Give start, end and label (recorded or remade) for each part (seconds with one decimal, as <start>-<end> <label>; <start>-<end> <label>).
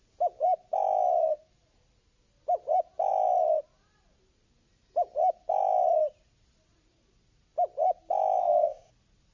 0.0-8.4 recorded; 8.4-8.9 remade; 8.9-9.3 recorded